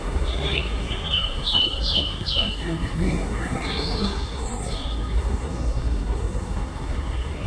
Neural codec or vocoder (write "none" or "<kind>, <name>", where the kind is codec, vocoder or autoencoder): codec, SNAC